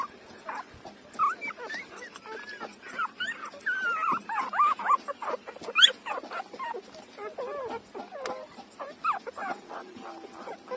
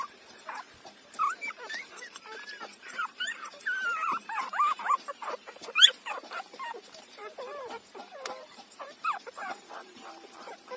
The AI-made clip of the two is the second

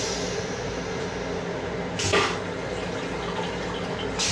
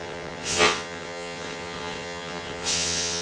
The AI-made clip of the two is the second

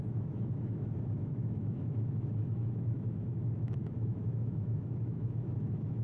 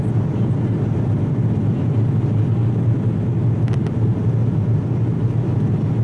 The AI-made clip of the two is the first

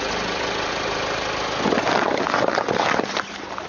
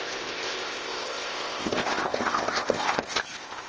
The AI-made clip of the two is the second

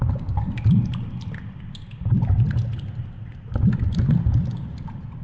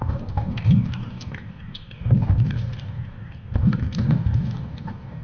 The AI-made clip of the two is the second